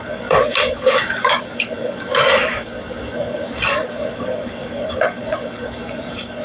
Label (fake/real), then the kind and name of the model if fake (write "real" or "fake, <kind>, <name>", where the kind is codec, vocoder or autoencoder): fake, codec, DAC